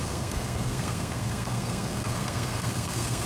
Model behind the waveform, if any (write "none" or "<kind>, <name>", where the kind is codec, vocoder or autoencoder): codec, SNAC